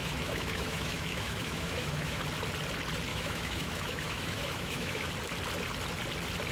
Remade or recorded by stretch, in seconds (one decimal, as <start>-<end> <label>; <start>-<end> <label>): 0.0-2.2 remade; 2.2-3.1 recorded; 3.1-5.1 remade; 5.1-6.5 recorded